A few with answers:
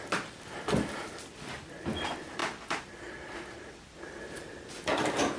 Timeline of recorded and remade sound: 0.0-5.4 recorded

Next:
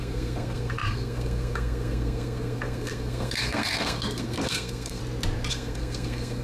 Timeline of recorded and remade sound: 0.0-5.0 remade; 5.0-5.5 recorded; 5.5-6.4 remade